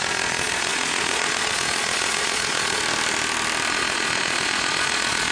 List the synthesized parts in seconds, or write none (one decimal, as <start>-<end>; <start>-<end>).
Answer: 0.0-2.8; 3.7-5.3